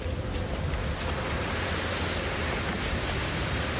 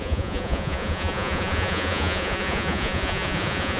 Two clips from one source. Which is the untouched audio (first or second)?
first